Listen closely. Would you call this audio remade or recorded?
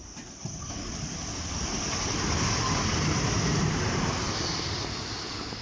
recorded